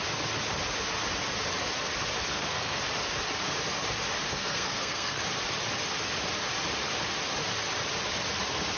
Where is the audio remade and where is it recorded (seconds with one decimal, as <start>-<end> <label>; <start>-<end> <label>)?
0.0-2.3 recorded; 2.3-2.8 remade; 2.8-4.3 recorded; 4.3-5.2 remade; 5.2-8.8 recorded